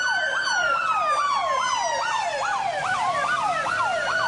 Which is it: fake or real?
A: real